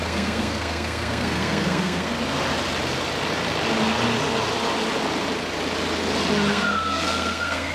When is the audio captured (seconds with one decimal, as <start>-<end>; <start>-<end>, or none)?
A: 2.1-6.5